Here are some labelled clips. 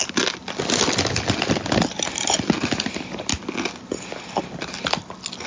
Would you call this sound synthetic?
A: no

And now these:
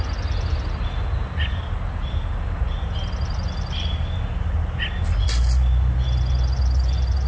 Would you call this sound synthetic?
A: no